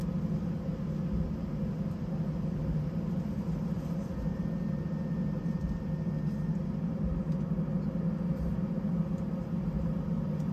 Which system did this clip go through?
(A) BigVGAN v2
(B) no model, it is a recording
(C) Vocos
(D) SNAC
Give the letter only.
B